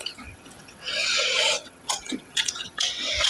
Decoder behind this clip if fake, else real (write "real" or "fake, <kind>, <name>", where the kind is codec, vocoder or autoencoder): fake, vocoder, WaveNeXt